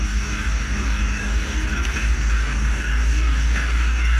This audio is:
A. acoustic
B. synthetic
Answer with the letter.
B